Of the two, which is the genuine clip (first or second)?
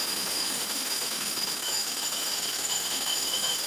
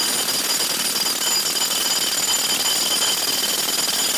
second